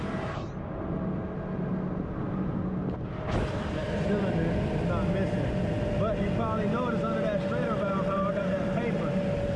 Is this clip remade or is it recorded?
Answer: recorded